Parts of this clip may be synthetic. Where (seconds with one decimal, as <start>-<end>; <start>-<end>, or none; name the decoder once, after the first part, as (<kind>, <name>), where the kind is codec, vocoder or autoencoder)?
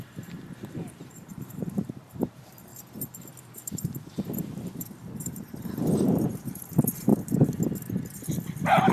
0.0-2.7 (vocoder, BigVGAN v2); 3.4-7.1